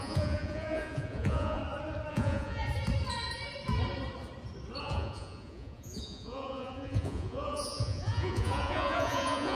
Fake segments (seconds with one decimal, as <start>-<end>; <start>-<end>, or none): 0.0-1.6; 2.1-2.6; 4.8-9.5